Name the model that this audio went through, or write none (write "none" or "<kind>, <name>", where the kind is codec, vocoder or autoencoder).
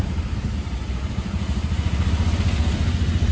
none